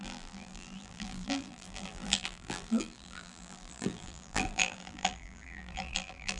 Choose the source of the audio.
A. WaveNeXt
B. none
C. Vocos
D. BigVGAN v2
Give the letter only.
D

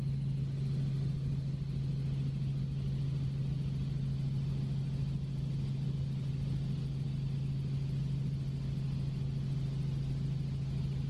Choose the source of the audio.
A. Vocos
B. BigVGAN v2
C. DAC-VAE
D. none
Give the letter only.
D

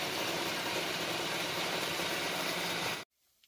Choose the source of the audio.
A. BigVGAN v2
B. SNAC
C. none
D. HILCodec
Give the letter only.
A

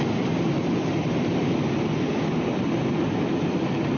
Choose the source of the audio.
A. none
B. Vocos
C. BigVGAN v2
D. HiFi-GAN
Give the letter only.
C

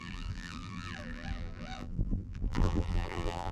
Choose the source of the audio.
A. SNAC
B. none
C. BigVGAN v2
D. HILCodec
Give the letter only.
C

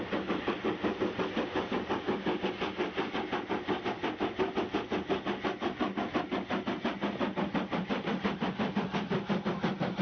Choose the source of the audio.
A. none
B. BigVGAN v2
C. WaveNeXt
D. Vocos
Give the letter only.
A